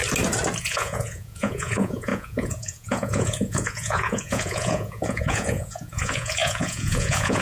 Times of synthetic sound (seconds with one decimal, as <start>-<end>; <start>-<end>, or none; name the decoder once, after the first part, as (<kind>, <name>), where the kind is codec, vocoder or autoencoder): 0.6-7.4 (vocoder, Vocos)